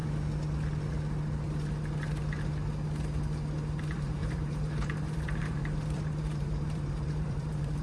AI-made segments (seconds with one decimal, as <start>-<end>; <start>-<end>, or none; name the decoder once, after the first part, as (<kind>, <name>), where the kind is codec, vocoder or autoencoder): 3.8-7.8 (vocoder, BigVGAN v2)